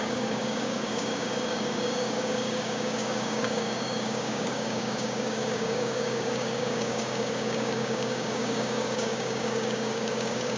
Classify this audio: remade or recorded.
remade